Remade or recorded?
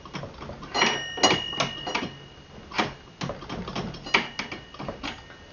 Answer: recorded